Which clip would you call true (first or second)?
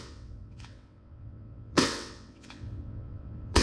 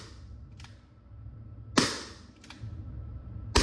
second